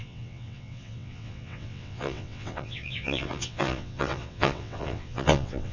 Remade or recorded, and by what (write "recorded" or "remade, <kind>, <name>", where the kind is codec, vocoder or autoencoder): remade, vocoder, WaveNeXt